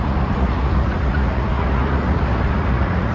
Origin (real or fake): fake